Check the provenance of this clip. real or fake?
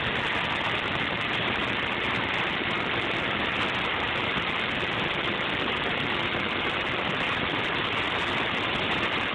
fake